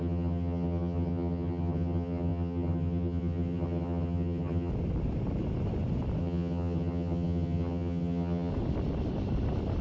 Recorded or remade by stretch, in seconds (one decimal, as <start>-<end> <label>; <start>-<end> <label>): 0.0-4.7 remade; 4.7-6.2 recorded; 6.2-8.5 remade; 8.5-9.8 recorded